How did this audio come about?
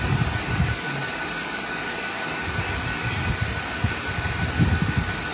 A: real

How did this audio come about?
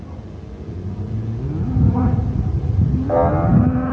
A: real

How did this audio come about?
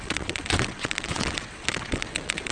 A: fake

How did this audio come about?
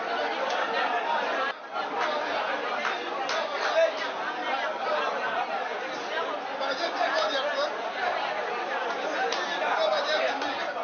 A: real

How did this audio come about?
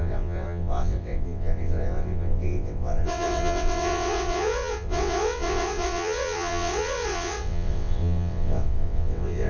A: fake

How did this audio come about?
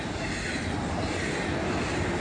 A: real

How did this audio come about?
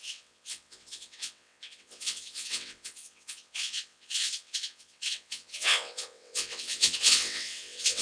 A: fake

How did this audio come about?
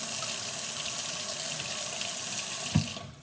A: real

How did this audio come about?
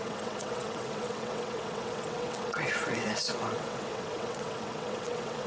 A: fake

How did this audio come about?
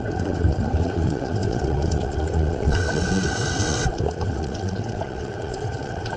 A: fake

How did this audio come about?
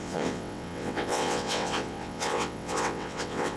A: fake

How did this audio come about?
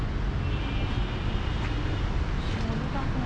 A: real